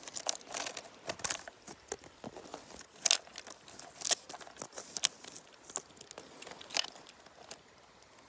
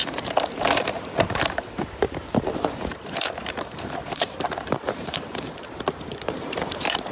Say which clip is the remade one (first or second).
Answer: second